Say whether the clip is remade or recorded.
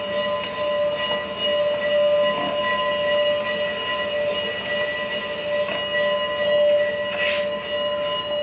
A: recorded